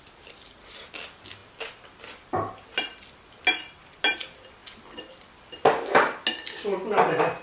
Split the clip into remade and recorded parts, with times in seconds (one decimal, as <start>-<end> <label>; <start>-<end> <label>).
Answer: 0.0-7.4 recorded